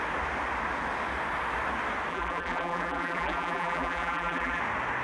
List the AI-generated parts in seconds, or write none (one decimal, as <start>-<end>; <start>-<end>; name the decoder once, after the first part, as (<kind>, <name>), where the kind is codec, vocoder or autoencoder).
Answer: 2.1-4.6 (vocoder, BigVGAN v2)